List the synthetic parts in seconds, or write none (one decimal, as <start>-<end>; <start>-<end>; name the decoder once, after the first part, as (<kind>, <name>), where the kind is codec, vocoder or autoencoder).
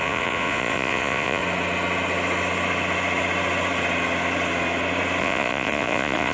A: 0.0-1.4 (vocoder, Vocos); 5.2-6.3